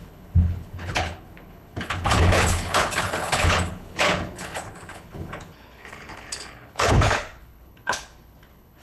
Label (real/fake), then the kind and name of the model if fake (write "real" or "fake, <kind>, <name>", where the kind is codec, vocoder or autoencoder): fake, codec, HILCodec